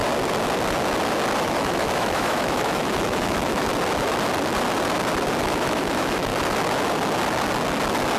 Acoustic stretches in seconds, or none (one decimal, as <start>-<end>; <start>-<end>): 0.0-1.4; 3.7-5.4; 6.3-8.2